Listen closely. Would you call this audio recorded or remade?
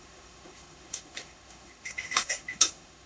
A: remade